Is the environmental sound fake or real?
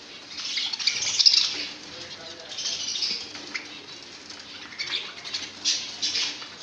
real